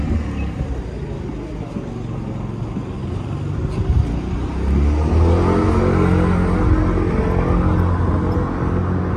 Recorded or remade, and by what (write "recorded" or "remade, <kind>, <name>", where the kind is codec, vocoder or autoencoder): recorded